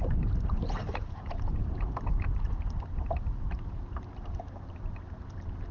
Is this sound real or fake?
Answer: fake